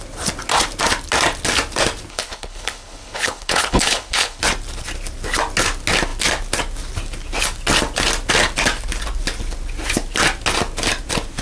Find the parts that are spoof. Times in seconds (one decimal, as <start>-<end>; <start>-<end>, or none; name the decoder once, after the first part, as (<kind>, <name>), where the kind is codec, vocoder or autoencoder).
2.1-4.4 (codec, HILCodec)